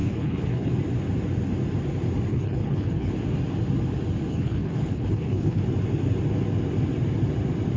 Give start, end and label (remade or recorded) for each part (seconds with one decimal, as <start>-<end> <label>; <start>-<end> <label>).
0.0-0.7 remade; 0.7-2.3 recorded; 2.3-3.1 remade; 3.1-4.3 recorded; 4.3-5.6 remade; 5.6-7.8 recorded